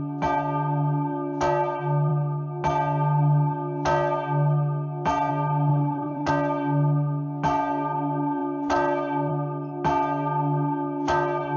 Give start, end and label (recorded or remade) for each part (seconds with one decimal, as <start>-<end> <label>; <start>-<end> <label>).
0.0-5.7 recorded; 5.7-6.3 remade; 6.3-11.6 recorded